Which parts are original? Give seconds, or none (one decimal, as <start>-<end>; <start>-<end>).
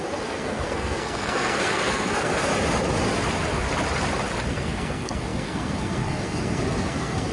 2.5-4.5